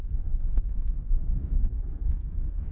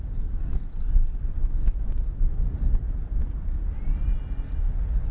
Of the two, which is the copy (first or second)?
first